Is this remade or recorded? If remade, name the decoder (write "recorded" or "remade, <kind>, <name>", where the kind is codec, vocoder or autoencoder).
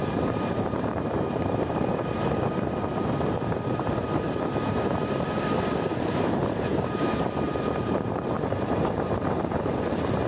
remade, vocoder, BigVGAN v2